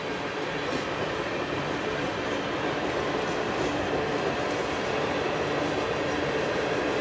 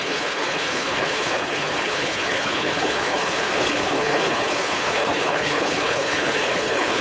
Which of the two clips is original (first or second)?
first